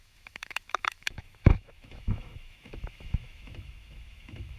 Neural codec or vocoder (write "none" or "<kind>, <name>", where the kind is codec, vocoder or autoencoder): autoencoder, DAC-VAE